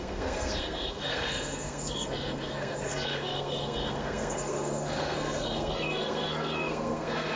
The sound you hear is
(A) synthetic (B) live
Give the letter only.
A